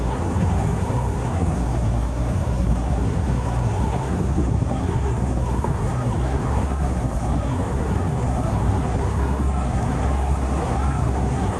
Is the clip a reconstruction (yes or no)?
yes